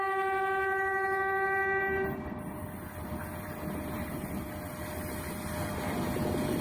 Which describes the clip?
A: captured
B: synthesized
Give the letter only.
A